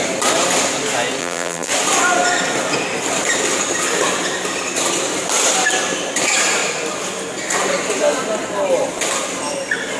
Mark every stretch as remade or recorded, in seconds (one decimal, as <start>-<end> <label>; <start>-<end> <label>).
0.0-1.2 recorded; 1.2-1.7 remade; 1.7-10.0 recorded